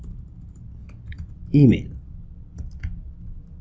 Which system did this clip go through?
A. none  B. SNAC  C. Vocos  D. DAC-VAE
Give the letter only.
A